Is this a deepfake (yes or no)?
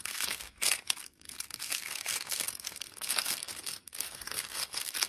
yes